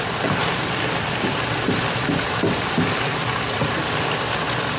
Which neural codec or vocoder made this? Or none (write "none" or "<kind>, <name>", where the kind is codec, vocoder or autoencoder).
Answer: vocoder, BigVGAN v2